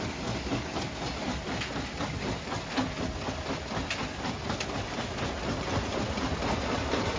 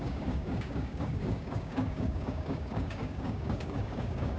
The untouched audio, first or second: first